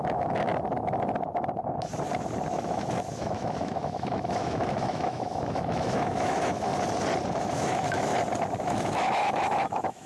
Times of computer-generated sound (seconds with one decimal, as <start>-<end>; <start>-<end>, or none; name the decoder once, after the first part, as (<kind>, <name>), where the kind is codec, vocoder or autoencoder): 0.0-0.5 (autoencoder, DAC-VAE); 2.5-6.7; 7.4-8.1; 8.6-10.1